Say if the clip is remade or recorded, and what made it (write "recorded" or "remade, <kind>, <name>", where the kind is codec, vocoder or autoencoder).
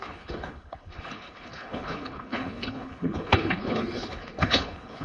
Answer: remade, codec, HILCodec